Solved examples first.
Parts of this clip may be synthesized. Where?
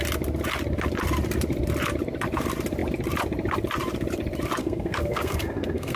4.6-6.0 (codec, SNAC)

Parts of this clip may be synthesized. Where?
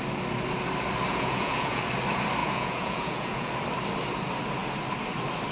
1.1-1.8 (vocoder, Vocos); 2.4-3.5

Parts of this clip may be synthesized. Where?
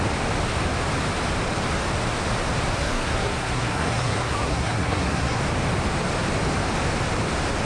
2.8-5.4 (codec, SNAC)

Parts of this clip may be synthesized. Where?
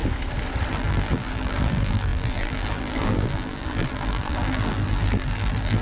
0.7-5.8 (vocoder, BigVGAN v2)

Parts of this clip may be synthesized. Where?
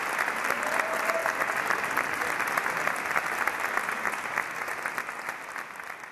none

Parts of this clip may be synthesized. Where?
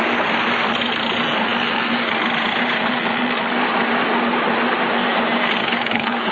5.6-6.3 (codec, HILCodec)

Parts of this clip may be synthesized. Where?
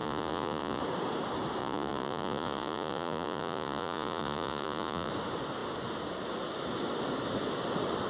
0.0-0.8 (vocoder, Vocos); 1.6-5.1